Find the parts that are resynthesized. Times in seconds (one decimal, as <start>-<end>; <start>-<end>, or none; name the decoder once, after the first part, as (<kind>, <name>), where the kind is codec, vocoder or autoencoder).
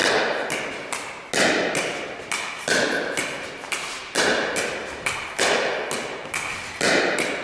none